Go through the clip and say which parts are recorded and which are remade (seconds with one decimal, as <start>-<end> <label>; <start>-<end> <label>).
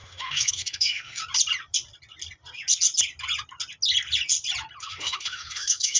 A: 0.0-1.2 remade; 1.2-4.8 recorded; 4.8-6.0 remade